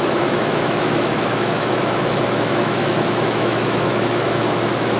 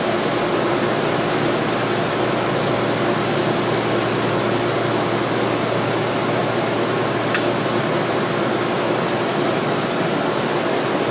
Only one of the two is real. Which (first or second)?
second